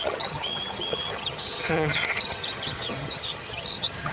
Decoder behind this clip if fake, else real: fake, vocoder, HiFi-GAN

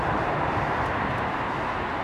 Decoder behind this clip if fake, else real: real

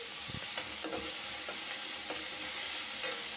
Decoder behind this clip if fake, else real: real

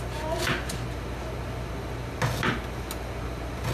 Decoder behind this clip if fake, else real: real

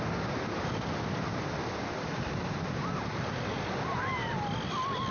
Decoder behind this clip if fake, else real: real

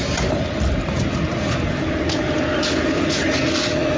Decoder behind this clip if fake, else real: real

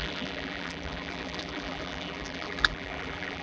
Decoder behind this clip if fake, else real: fake, vocoder, BigVGAN v2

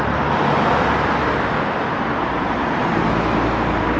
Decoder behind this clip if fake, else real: real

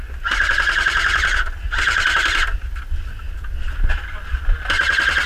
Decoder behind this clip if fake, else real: real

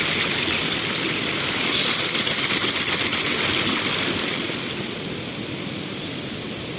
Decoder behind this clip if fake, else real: fake, vocoder, BigVGAN v2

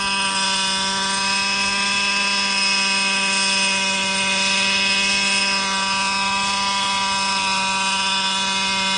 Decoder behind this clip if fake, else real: real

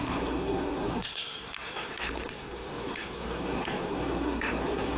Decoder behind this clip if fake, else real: fake, codec, SNAC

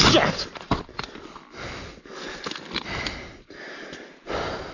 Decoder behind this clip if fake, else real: real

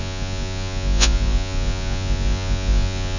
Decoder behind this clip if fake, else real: fake, vocoder, Vocos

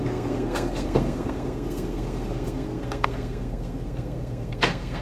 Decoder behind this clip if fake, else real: fake, codec, SNAC